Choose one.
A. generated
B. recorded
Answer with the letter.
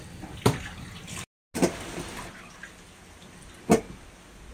B